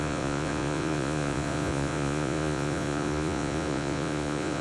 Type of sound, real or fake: fake